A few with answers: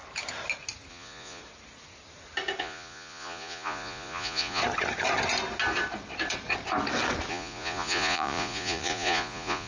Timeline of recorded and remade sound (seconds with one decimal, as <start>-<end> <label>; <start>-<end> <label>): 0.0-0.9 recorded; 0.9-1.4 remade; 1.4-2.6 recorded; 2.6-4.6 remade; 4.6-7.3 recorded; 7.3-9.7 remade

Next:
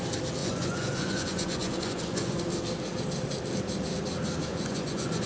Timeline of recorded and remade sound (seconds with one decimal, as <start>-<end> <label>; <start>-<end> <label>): 0.0-0.4 recorded; 0.4-2.4 remade; 2.4-4.5 recorded; 4.5-5.3 remade

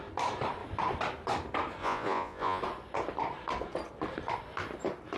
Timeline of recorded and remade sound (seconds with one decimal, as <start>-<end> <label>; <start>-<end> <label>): 0.0-1.8 recorded; 1.8-2.6 remade; 2.6-5.2 recorded

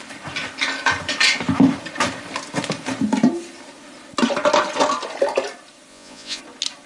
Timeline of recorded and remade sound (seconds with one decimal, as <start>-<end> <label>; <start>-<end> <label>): 0.0-5.9 recorded; 5.9-6.4 remade; 6.4-6.9 recorded

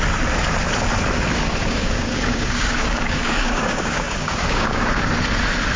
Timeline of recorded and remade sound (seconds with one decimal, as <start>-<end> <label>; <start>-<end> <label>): 0.0-1.6 recorded; 1.6-5.1 remade; 5.1-5.8 recorded